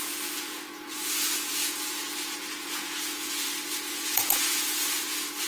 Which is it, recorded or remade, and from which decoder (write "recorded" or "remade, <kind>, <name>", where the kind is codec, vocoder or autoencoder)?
remade, vocoder, Vocos